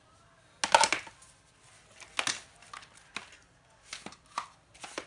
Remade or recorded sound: recorded